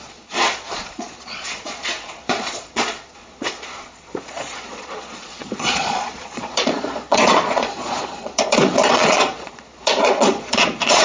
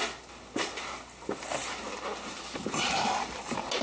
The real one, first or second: second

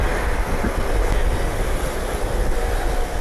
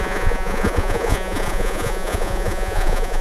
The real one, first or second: first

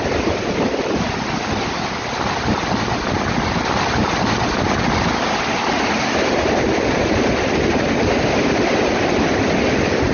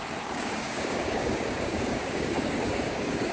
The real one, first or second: first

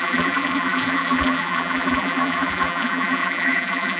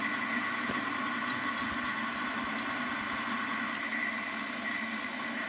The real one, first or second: second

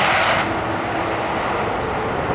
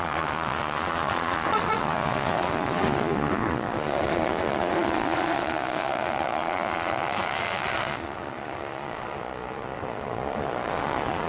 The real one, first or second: first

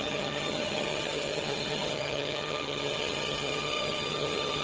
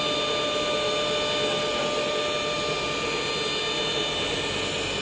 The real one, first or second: second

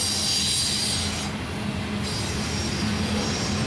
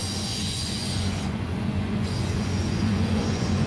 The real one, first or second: first